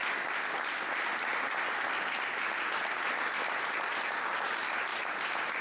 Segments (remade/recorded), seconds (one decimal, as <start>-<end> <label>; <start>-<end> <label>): 0.0-5.6 recorded